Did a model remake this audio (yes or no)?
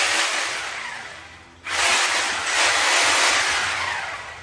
no